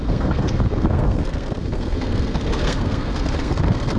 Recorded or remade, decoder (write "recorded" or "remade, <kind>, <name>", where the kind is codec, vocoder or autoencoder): remade, codec, SNAC